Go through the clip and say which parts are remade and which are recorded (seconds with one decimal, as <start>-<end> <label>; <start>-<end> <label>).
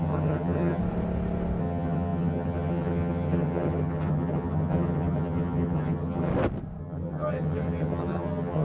0.0-0.8 remade; 0.8-1.6 recorded; 1.6-6.3 remade; 6.3-6.8 recorded; 6.8-8.6 remade